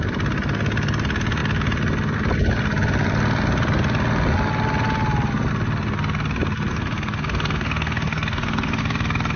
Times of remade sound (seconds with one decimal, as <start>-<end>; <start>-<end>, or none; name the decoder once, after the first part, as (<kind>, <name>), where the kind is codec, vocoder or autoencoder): 6.7-8.8 (codec, SNAC)